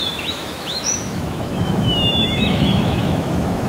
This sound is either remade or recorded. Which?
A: remade